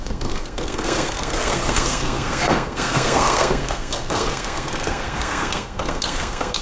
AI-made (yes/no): yes